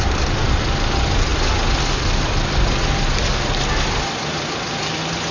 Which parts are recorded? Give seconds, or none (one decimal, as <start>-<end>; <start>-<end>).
0.0-5.3